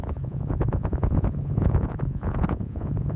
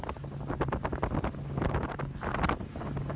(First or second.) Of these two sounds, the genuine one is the second